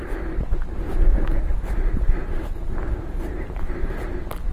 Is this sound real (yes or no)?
no